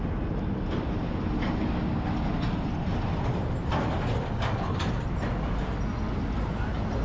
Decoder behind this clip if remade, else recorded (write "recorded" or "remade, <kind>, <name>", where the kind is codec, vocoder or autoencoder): recorded